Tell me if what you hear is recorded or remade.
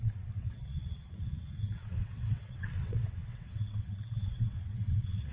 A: remade